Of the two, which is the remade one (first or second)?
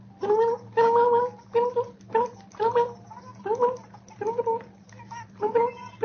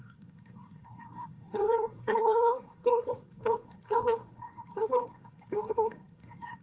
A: second